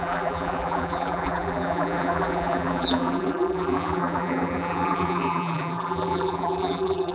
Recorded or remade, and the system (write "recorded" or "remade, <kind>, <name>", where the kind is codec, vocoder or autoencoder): remade, vocoder, BigVGAN v2